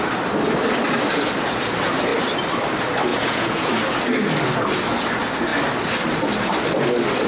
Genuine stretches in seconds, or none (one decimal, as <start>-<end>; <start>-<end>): 0.0-3.1; 3.7-7.3